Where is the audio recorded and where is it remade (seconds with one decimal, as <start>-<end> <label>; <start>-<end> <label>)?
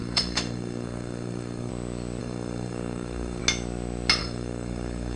0.0-1.7 remade; 1.7-2.2 recorded; 2.2-3.4 remade; 3.4-4.2 recorded; 4.2-5.2 remade